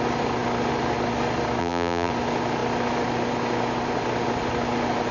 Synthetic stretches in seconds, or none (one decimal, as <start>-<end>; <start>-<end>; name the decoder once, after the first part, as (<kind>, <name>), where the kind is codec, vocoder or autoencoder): 1.6-2.1 (vocoder, BigVGAN v2)